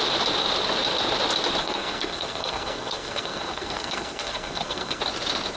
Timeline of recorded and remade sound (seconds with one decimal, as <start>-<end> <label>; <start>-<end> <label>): 0.0-1.6 recorded; 1.6-5.0 remade; 5.0-5.6 recorded

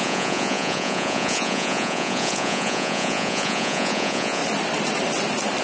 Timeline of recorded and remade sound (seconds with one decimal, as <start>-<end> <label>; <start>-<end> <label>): 0.0-4.4 remade; 4.4-5.6 recorded

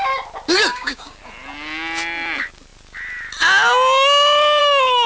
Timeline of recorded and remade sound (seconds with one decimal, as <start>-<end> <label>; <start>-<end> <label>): 0.0-0.7 recorded; 0.7-1.2 remade; 1.2-5.1 recorded